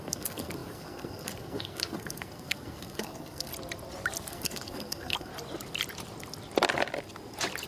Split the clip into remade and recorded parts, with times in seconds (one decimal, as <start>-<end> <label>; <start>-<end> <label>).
0.0-3.5 remade; 3.5-4.3 recorded; 4.3-5.3 remade; 5.3-7.7 recorded